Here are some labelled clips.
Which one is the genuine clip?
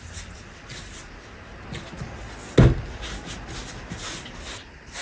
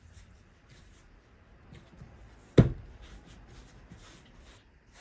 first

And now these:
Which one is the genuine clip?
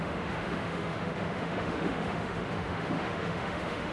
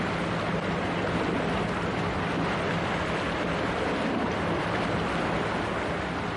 second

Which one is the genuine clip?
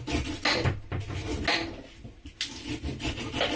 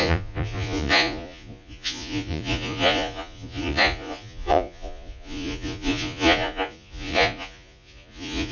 first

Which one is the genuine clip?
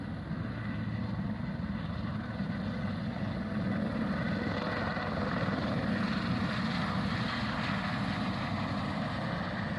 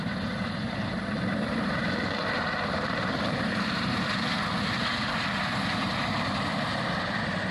first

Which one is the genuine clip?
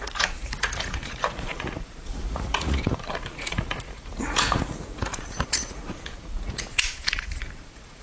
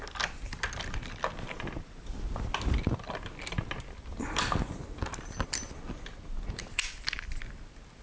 second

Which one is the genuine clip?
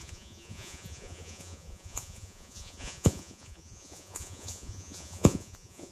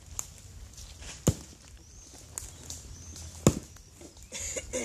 second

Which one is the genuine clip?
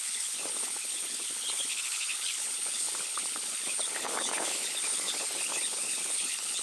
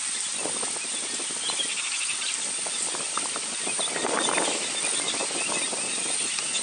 second